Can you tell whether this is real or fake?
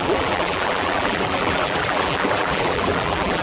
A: fake